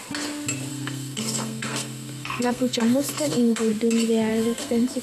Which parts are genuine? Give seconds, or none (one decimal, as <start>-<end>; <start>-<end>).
0.0-0.7; 3.7-4.3